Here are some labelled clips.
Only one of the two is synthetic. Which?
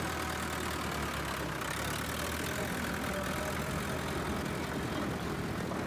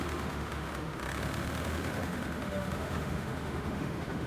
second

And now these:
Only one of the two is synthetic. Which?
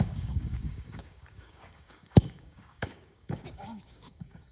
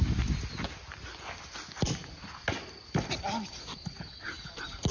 first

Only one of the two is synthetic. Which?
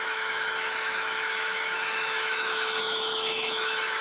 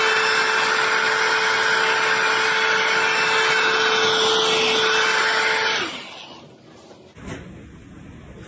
first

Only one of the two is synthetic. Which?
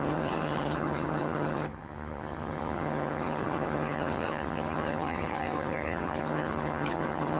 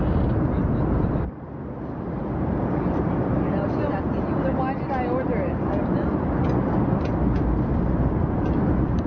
first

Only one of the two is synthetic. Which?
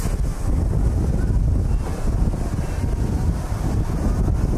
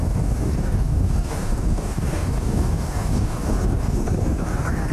second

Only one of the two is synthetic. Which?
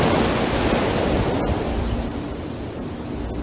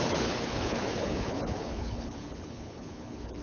second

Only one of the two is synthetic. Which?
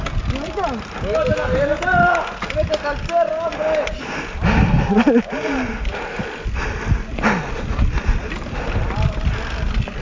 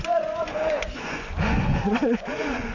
second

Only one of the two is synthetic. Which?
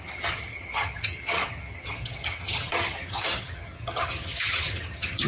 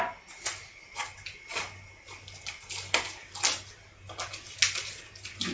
first